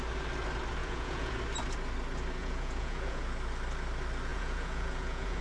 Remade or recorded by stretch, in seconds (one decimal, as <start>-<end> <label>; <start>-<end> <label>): 0.0-0.8 recorded; 0.8-1.4 remade; 1.4-2.4 recorded; 2.4-3.2 remade; 3.2-4.3 recorded; 4.3-5.4 remade